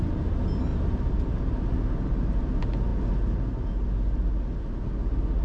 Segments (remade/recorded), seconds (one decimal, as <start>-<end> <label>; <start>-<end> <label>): 0.0-5.4 recorded